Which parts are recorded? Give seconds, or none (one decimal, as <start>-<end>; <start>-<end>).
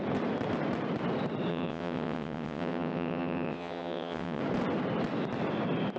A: 0.0-1.5; 4.4-6.0